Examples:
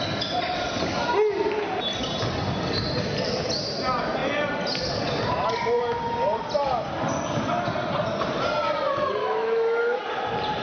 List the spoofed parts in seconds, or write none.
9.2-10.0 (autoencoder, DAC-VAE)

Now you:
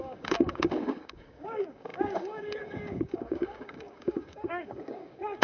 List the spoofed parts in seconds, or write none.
0.0-5.4 (codec, DAC)

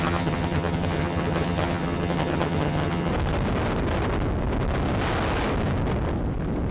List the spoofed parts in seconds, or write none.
0.0-3.1 (vocoder, HiFi-GAN)

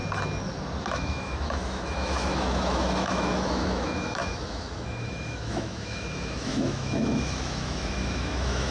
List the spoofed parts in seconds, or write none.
0.8-8.7 (autoencoder, DAC-VAE)

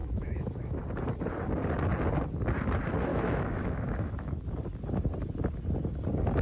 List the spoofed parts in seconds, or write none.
0.0-0.8 (autoencoder, DAC-VAE); 3.1-4.4

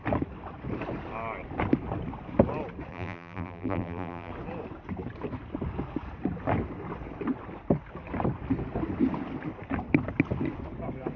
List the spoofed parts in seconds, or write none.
2.9-4.3 (vocoder, BigVGAN v2)